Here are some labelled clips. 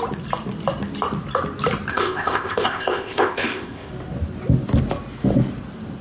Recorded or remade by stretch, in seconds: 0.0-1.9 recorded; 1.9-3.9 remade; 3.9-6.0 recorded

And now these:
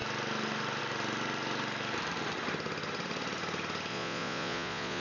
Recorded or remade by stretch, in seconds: 0.0-3.9 recorded; 3.9-5.0 remade

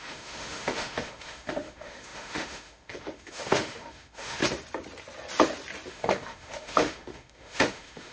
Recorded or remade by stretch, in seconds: 0.0-4.4 remade; 4.4-5.9 recorded; 5.9-8.1 remade